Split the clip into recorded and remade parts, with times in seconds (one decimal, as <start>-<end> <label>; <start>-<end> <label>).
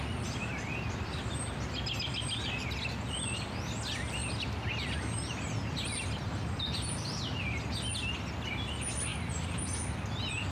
0.0-10.5 recorded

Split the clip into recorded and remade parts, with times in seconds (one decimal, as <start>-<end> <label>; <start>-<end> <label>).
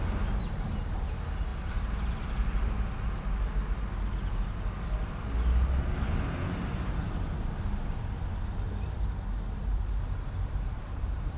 0.0-9.7 recorded; 9.7-11.4 remade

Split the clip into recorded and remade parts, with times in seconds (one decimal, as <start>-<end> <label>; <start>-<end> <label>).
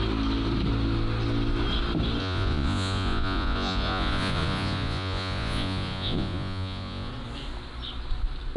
0.0-2.2 recorded; 2.2-7.1 remade; 7.1-8.6 recorded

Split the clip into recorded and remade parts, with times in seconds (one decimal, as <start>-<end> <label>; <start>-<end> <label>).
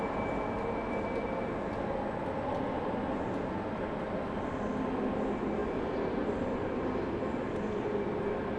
0.0-8.6 recorded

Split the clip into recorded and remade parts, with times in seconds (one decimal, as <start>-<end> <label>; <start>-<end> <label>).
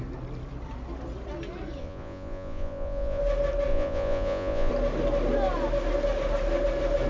0.0-1.8 recorded; 1.8-3.2 remade; 3.2-3.7 recorded; 3.7-4.7 remade; 4.7-7.1 recorded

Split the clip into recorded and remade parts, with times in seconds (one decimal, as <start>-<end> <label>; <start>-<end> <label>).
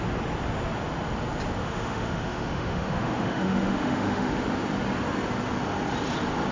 0.0-1.6 recorded; 1.6-4.4 remade; 4.4-6.5 recorded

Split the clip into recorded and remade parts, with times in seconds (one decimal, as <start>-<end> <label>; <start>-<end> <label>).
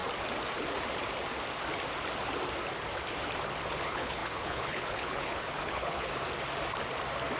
0.0-3.8 recorded; 3.8-6.1 remade; 6.1-7.4 recorded